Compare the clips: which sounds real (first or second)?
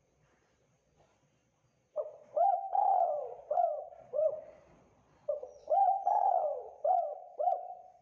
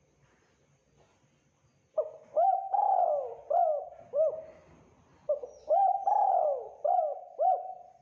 second